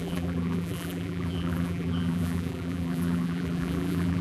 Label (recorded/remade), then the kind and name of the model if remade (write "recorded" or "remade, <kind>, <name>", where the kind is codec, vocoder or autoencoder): remade, vocoder, BigVGAN v2